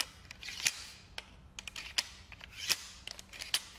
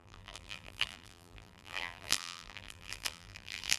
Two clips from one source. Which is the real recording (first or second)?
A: first